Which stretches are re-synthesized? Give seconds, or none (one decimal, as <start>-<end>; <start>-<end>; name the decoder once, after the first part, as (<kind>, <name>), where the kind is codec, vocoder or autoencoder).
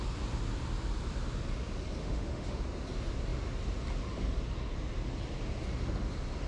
2.0-2.6 (autoencoder, DAC-VAE)